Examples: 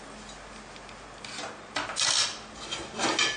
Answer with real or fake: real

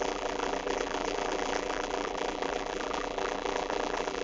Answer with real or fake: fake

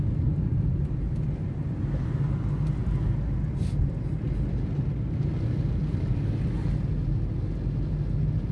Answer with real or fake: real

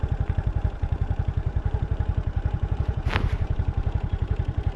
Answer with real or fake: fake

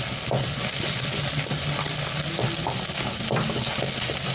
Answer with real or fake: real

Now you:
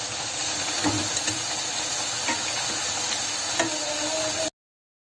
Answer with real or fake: real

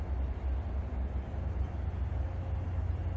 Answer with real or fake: real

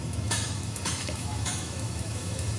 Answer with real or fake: fake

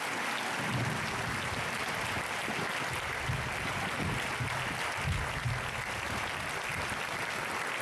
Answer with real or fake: real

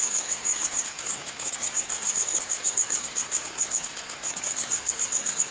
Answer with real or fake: fake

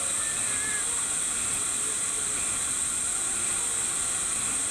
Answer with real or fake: real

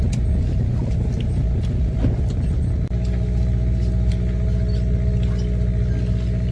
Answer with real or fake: real